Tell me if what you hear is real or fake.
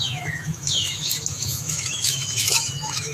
fake